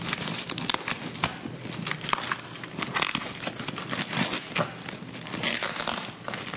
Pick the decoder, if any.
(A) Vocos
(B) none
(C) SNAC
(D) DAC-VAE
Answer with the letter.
B